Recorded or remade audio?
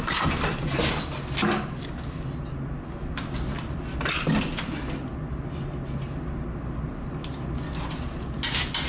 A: recorded